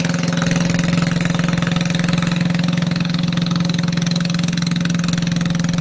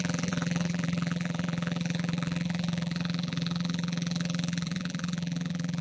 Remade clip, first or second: second